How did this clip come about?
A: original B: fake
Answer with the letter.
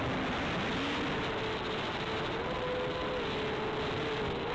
A